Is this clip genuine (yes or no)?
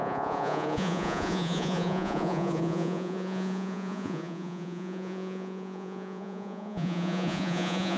no